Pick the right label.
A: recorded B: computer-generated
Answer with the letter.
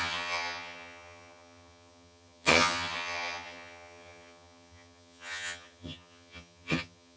B